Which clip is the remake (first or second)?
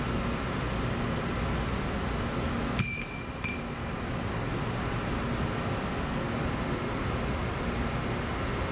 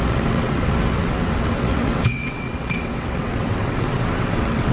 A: second